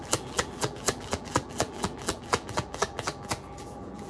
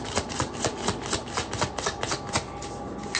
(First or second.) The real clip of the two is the second